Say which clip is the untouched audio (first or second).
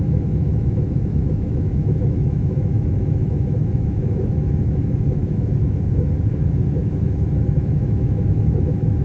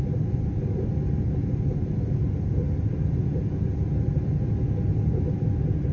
second